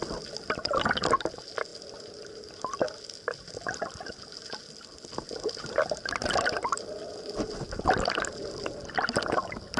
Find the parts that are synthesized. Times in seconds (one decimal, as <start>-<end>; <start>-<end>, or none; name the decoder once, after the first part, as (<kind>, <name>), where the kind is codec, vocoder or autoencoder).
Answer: none